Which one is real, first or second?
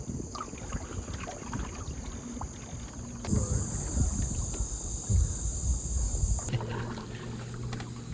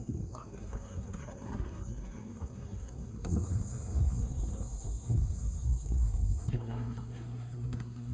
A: first